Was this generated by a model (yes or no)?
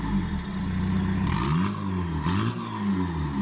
no